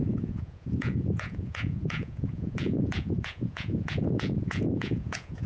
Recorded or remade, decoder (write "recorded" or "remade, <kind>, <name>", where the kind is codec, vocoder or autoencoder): remade, vocoder, Vocos